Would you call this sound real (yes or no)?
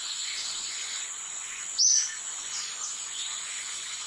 no